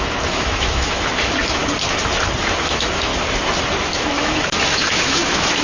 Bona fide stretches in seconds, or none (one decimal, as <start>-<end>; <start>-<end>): 1.6-2.4; 3.1-3.8